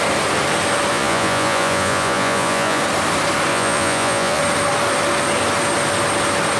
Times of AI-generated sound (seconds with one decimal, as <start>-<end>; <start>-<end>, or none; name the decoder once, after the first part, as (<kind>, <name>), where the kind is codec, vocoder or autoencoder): 0.9-2.8 (vocoder, Vocos); 3.5-4.4